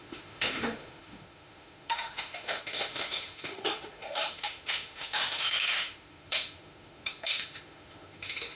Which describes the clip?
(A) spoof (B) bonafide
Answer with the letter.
A